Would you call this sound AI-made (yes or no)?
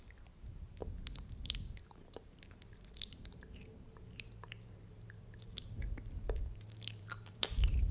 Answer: yes